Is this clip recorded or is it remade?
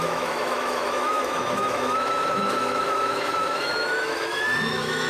remade